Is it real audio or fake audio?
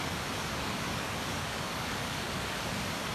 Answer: fake